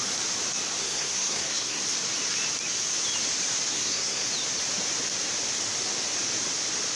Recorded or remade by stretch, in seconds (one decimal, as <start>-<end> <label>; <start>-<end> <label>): 0.0-0.8 recorded; 0.8-1.8 remade; 1.8-3.7 recorded; 3.7-4.3 remade; 4.3-7.0 recorded